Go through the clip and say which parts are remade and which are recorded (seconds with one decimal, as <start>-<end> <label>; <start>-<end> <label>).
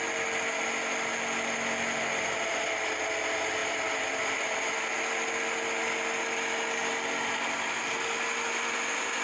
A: 0.0-9.2 recorded